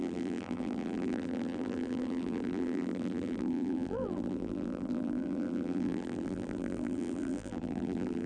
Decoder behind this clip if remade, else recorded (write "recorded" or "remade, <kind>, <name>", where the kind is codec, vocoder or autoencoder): remade, vocoder, BigVGAN v2